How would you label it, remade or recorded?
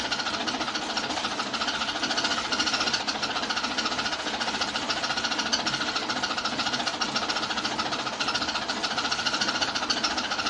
recorded